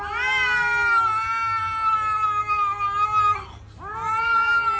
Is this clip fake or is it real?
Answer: real